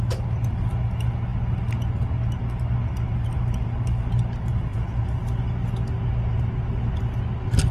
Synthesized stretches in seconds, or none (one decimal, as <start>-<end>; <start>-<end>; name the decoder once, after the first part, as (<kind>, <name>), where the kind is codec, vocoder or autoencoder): none